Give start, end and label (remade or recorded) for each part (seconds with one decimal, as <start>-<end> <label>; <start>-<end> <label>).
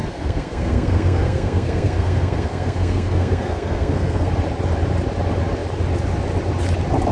0.0-4.3 remade; 4.3-7.1 recorded